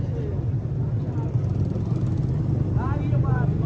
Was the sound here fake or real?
real